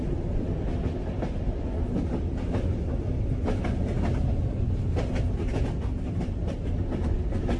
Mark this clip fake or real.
real